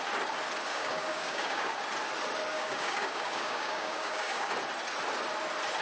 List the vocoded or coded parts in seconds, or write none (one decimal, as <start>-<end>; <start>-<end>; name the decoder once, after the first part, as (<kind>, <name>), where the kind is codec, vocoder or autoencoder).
0.7-1.8 (codec, DAC); 2.5-4.5